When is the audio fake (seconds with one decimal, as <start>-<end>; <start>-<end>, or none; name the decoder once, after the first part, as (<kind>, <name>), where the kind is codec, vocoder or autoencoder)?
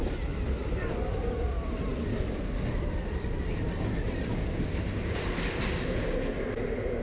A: none